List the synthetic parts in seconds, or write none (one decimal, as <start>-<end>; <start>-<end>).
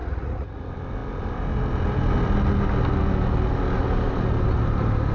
0.0-0.6